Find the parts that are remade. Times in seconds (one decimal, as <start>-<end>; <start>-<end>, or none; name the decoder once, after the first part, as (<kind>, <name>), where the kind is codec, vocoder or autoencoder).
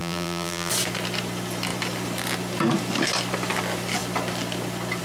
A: 0.0-0.7 (vocoder, BigVGAN v2)